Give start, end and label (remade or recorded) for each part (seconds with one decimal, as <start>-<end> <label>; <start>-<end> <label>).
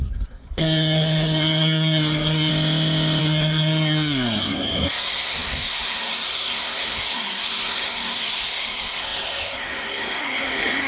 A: 0.0-2.5 remade; 2.5-3.2 recorded; 3.2-10.9 remade